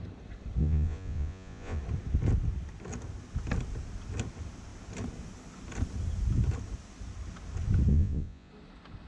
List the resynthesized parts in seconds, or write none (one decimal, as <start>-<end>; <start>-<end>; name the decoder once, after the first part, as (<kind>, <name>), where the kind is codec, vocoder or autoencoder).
0.6-1.8 (vocoder, Vocos); 7.9-8.5